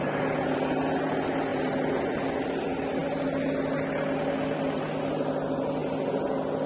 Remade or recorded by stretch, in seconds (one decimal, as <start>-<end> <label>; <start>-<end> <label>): 0.0-6.7 recorded